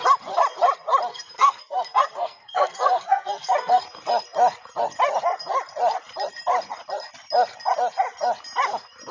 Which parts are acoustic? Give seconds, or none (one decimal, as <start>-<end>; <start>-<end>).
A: 0.0-1.1; 3.8-9.1